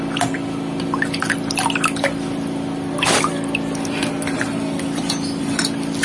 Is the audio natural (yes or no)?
yes